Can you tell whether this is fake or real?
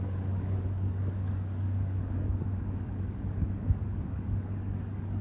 fake